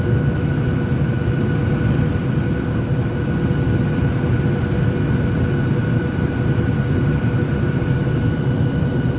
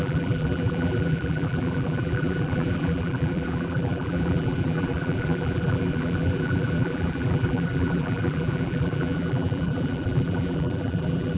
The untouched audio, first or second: first